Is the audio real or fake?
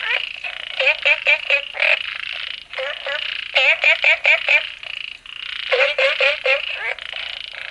real